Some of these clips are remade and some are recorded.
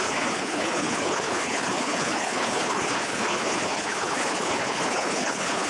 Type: remade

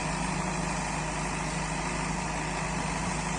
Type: recorded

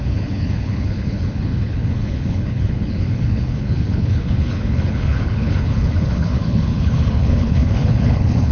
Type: remade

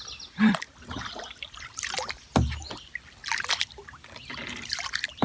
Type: recorded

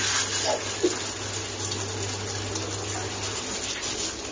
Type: recorded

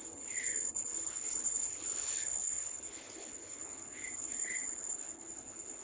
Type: remade